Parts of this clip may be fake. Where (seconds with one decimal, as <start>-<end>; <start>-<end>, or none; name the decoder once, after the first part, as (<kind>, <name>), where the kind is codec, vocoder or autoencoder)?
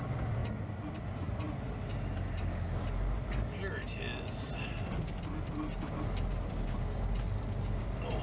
none